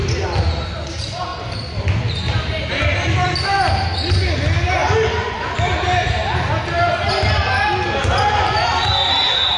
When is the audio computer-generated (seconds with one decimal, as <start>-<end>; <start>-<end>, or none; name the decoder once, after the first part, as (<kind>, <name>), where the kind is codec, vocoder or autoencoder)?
none